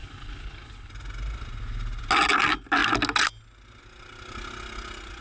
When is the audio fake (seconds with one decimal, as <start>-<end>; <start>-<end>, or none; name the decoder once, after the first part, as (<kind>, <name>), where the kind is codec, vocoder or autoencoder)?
0.0-0.9 (codec, HILCodec)